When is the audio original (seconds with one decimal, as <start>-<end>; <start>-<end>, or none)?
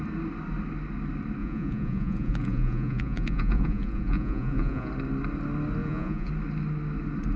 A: 0.0-1.4; 4.9-5.8; 6.3-7.4